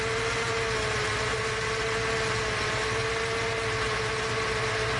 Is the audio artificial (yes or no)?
no